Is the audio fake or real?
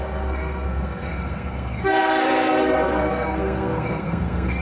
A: fake